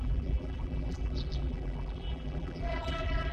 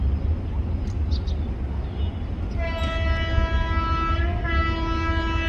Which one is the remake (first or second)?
first